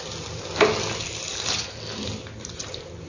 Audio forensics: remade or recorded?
recorded